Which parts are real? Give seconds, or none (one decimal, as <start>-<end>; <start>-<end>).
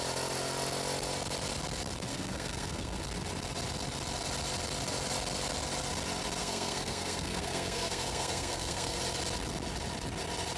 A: 0.0-2.1; 3.0-6.4; 9.0-10.6